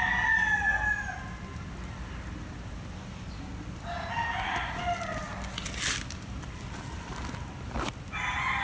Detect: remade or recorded recorded